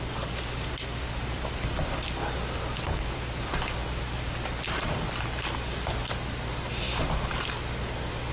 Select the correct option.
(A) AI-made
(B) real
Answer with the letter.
B